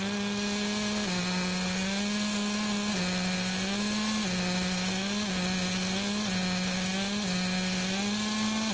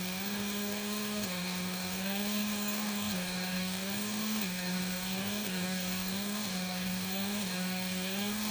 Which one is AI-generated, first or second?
second